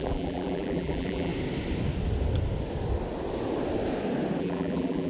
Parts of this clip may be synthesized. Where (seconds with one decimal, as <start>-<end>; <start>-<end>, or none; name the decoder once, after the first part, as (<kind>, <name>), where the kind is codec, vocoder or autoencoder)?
0.0-1.3 (vocoder, BigVGAN v2); 4.4-5.1

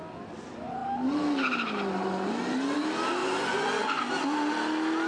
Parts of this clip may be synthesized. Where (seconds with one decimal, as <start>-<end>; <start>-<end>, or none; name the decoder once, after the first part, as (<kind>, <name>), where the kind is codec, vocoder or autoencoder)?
3.2-4.0 (vocoder, Vocos)

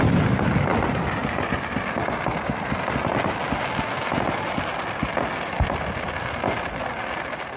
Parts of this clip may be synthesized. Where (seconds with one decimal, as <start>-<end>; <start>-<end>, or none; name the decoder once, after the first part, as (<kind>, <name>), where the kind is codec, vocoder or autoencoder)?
none